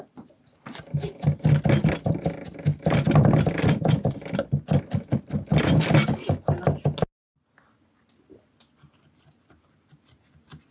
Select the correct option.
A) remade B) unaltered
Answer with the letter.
B